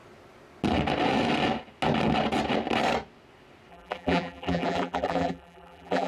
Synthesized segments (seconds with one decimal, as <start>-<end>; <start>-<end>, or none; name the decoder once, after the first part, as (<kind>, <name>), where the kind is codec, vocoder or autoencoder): 3.7-6.1 (vocoder, BigVGAN v2)